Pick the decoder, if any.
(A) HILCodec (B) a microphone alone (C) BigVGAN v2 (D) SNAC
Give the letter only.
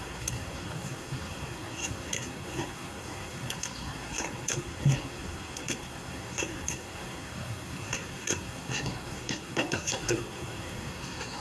D